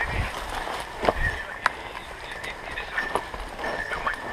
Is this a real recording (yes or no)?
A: yes